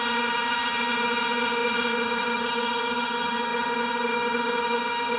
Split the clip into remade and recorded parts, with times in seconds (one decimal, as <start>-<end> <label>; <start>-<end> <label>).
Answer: 0.0-5.2 remade